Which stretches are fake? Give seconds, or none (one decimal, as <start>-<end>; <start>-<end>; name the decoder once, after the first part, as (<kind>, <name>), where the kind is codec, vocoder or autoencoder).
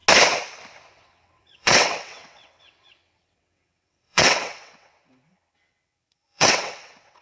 0.9-7.2 (vocoder, WaveNeXt)